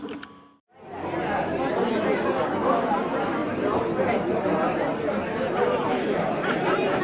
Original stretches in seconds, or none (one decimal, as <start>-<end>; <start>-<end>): 0.0-3.4